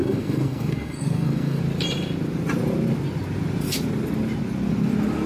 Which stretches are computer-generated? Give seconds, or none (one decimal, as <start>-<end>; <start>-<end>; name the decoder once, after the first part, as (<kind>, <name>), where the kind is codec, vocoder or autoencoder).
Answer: 0.0-1.6 (codec, SNAC)